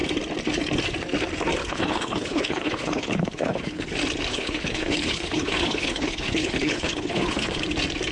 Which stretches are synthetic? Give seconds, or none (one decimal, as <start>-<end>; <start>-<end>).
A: 1.6-3.9; 4.3-7.6